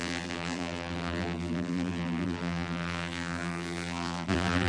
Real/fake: fake